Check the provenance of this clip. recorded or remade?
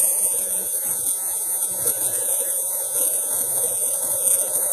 remade